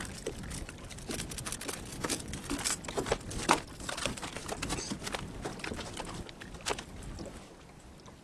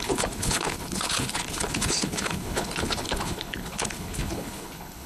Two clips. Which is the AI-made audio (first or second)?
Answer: second